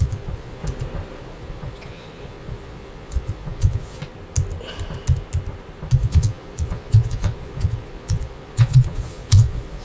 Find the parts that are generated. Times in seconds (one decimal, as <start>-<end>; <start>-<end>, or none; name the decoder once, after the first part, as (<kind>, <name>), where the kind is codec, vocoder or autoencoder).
0.0-0.6 (vocoder, Vocos); 1.2-4.0; 6.0-9.8